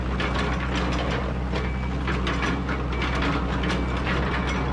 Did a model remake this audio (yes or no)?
no